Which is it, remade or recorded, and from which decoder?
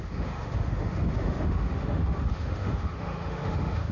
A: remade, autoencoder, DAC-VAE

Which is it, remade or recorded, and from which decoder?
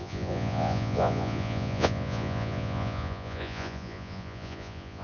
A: remade, vocoder, Vocos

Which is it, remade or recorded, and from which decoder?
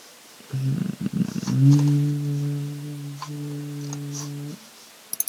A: recorded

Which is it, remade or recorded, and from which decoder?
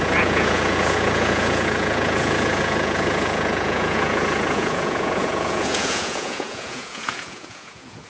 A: remade, vocoder, Vocos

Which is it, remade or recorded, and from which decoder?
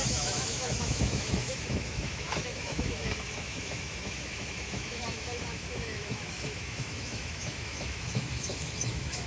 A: remade, autoencoder, DAC-VAE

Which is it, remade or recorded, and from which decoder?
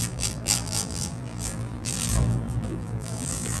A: remade, vocoder, BigVGAN v2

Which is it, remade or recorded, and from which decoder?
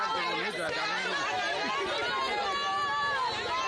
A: recorded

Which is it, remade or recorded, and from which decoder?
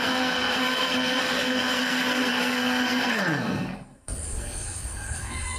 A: remade, codec, SNAC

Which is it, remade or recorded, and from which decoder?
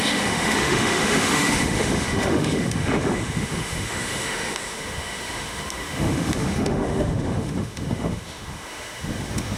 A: remade, autoencoder, DAC-VAE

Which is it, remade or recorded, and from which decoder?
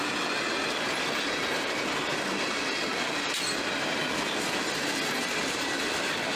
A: recorded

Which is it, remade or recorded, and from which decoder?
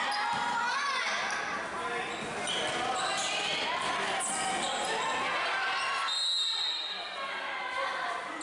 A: recorded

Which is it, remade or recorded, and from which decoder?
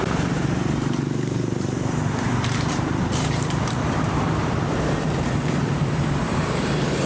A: remade, vocoder, BigVGAN v2